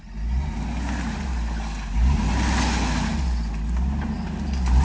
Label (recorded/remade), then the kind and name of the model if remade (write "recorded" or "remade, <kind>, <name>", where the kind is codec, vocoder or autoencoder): recorded